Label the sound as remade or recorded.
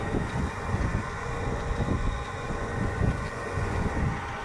remade